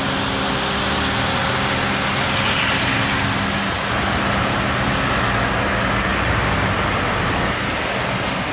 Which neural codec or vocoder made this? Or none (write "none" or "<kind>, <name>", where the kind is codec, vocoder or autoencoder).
none